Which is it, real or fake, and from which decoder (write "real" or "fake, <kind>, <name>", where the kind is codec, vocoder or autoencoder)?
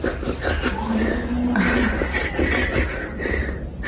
real